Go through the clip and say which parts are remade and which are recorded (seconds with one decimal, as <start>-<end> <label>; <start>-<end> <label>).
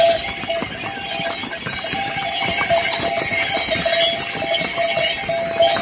0.0-1.4 recorded; 1.4-3.5 remade; 3.5-5.8 recorded